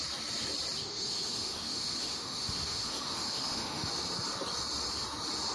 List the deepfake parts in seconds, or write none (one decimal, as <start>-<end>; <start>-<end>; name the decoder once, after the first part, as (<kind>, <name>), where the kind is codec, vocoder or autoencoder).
0.8-3.9 (autoencoder, DAC-VAE)